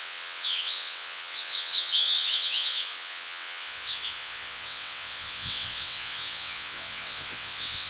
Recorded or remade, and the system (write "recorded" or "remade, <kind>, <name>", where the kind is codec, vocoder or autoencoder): remade, vocoder, WaveNeXt